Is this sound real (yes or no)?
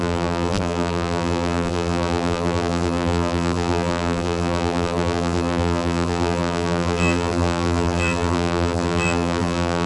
no